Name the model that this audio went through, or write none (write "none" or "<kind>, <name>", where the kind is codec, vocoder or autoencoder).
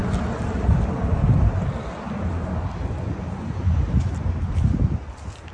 none